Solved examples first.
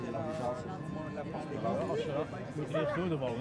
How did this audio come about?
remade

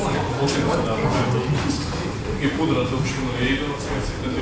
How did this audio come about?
recorded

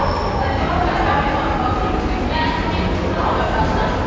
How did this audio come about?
recorded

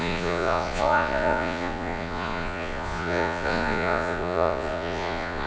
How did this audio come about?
remade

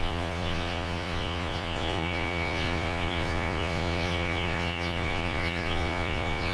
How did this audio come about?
remade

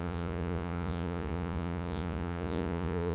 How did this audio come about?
remade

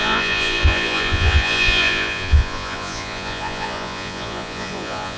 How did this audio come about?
remade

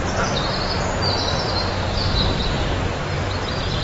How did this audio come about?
recorded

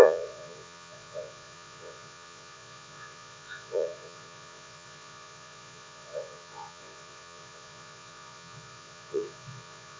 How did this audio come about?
remade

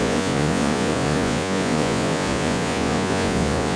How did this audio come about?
remade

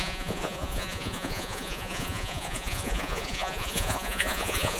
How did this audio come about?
remade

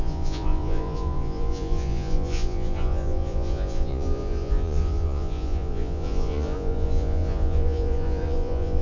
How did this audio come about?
remade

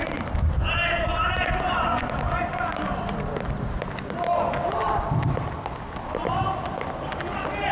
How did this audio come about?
recorded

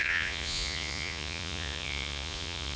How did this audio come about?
remade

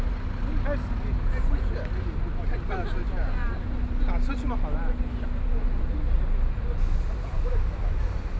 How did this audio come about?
recorded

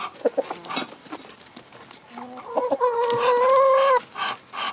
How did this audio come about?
recorded